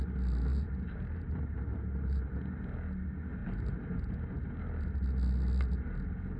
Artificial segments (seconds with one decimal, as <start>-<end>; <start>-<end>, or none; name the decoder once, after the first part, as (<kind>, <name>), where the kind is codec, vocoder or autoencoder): 0.5-2.4 (vocoder, BigVGAN v2); 3.4-4.3